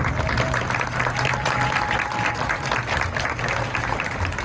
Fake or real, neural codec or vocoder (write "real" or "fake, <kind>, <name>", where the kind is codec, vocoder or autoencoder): fake, vocoder, BigVGAN v2